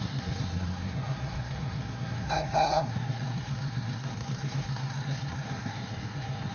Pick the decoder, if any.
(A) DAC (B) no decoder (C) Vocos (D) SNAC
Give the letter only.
D